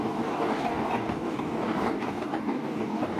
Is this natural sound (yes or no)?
no